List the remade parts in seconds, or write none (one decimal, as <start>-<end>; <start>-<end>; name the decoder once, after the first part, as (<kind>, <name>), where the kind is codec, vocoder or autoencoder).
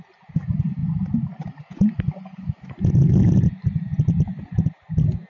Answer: none